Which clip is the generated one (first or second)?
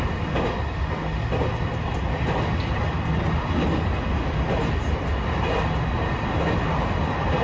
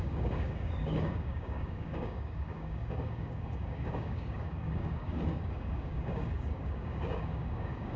second